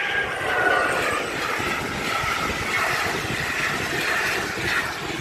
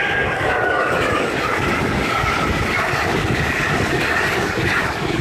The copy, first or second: second